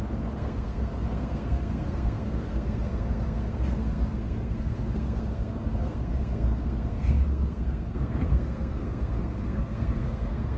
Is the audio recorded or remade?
remade